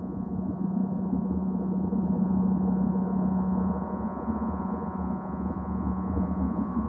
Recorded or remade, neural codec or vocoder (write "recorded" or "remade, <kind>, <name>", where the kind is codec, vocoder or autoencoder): remade, vocoder, Vocos